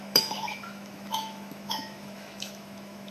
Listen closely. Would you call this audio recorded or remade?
remade